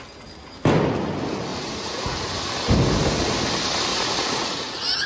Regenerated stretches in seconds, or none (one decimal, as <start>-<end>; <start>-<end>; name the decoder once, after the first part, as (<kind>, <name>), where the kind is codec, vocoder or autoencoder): 1.5-2.5 (vocoder, Vocos); 3.9-5.1